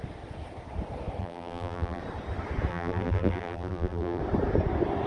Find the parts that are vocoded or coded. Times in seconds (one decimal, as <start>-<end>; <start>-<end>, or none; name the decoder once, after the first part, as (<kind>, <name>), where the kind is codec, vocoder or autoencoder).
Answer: 1.2-2.0 (vocoder, BigVGAN v2); 2.7-4.2